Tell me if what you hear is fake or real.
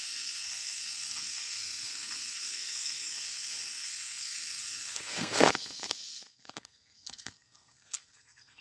fake